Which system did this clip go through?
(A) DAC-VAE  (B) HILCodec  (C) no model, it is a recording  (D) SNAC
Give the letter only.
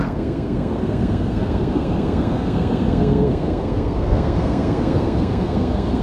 D